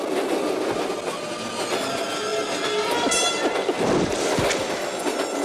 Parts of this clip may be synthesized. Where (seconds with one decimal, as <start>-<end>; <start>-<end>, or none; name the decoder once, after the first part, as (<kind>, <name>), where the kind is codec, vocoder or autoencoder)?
none